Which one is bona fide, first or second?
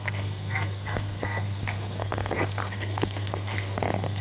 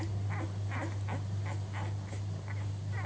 second